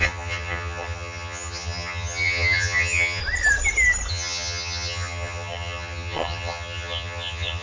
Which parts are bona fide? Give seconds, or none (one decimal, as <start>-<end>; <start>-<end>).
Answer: 3.2-4.1